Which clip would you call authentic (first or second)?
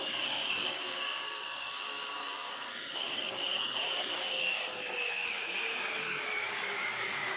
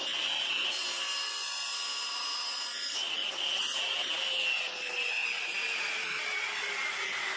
second